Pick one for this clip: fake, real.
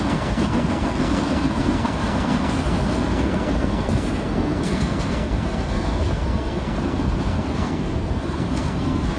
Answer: fake